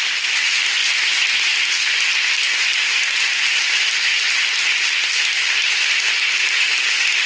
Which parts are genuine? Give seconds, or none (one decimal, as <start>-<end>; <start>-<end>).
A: 0.0-7.3